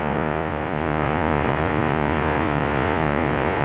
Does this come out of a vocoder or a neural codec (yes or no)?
yes